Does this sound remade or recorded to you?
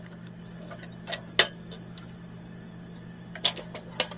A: recorded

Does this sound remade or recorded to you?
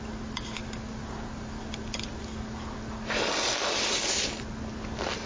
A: recorded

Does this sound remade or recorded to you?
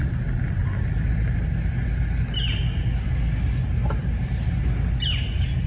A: recorded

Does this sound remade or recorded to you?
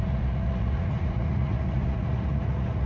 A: remade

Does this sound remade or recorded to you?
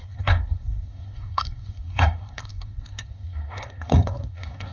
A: remade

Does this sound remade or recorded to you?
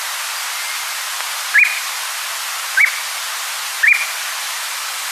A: recorded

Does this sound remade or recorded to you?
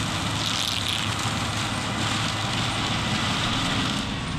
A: recorded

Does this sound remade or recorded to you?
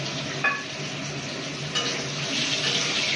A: recorded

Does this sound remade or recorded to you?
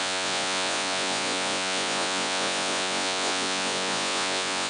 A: remade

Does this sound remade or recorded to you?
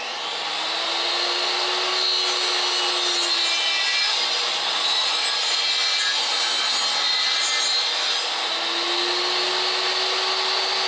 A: recorded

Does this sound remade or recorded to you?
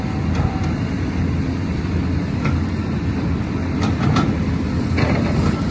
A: remade